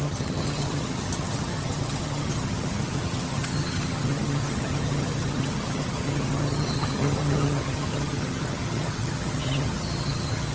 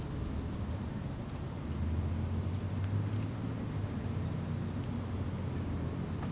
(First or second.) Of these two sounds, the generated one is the first